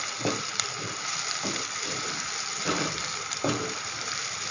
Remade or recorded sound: remade